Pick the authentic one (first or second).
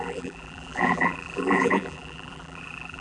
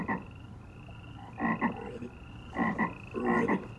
second